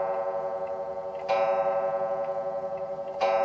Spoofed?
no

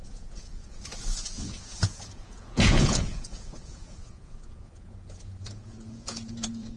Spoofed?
yes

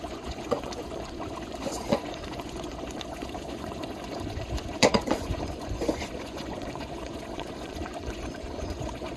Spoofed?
yes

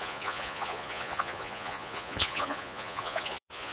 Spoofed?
yes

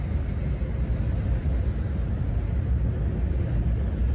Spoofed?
no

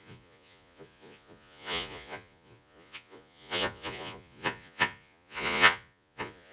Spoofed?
yes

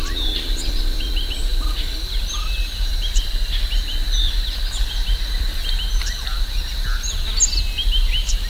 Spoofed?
no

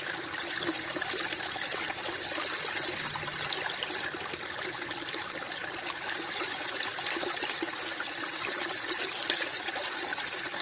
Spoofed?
no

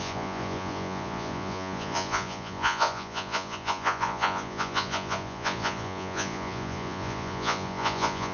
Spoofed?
yes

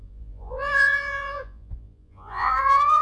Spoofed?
yes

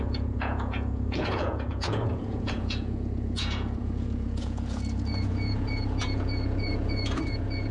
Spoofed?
yes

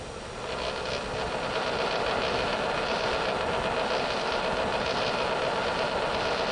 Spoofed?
no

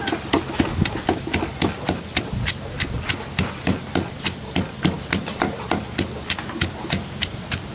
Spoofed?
no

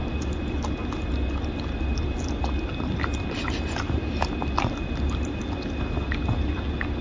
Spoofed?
no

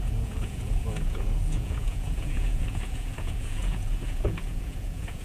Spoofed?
yes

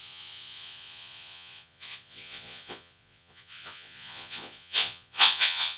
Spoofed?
yes